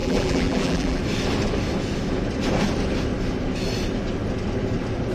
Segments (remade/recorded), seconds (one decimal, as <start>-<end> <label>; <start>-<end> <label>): 0.0-1.0 remade; 1.0-5.1 recorded